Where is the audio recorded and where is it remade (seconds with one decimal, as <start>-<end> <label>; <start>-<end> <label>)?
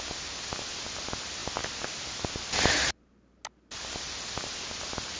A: 0.0-5.2 recorded